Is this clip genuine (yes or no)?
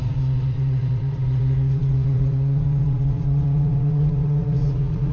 no